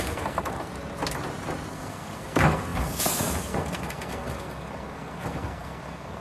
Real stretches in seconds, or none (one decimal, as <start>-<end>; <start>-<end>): 0.7-1.7